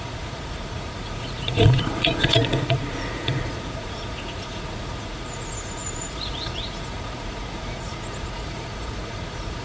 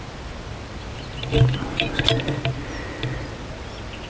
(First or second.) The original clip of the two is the second